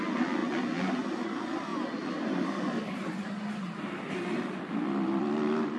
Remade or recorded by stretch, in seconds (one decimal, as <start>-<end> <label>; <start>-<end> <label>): 0.0-0.4 remade; 0.4-1.0 recorded; 1.0-5.8 remade